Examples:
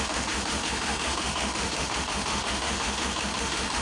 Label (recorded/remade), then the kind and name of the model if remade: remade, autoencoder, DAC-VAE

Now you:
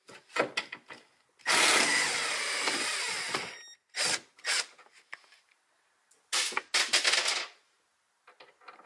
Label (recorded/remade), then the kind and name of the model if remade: recorded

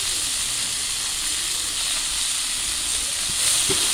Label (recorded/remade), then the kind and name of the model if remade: recorded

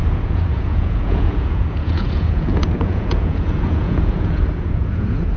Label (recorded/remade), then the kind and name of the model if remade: remade, vocoder, Vocos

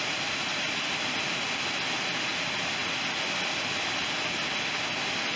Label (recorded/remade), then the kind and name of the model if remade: recorded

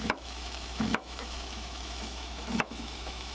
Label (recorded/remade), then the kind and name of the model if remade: remade, autoencoder, DAC-VAE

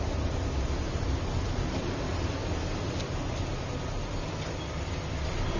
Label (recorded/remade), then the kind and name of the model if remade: recorded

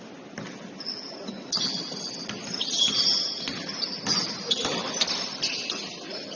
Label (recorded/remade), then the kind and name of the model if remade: recorded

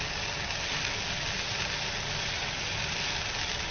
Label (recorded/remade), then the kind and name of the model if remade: recorded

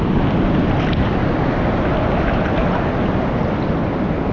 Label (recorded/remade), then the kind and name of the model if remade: recorded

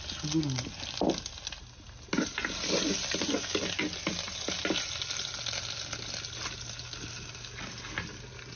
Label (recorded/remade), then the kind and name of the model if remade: recorded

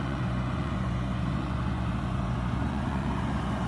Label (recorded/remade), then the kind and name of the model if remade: remade, vocoder, Vocos